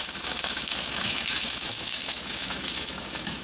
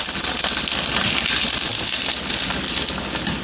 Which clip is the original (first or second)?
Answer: second